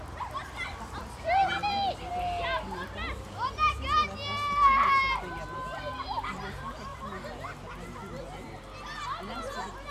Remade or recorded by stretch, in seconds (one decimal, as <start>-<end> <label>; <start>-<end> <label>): 0.0-9.9 recorded